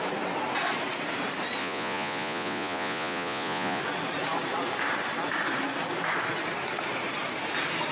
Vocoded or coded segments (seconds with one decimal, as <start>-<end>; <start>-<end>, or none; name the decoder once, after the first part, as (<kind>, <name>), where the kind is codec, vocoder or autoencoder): 1.6-3.8 (vocoder, Vocos)